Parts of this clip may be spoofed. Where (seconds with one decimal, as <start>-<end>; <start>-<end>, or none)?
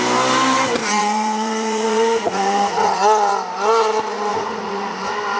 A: 0.8-3.3; 4.3-5.0